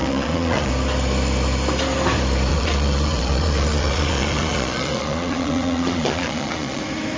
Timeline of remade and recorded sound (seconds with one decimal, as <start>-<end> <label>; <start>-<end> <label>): 0.0-0.7 remade; 0.7-2.5 recorded; 2.5-6.8 remade; 6.8-7.2 recorded